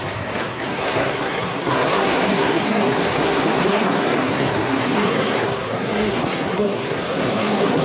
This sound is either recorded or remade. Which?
remade